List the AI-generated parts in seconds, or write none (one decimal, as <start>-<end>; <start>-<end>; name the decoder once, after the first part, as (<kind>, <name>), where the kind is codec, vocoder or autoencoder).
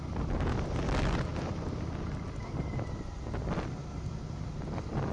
1.3-4.1 (vocoder, BigVGAN v2)